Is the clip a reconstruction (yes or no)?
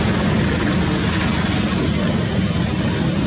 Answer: no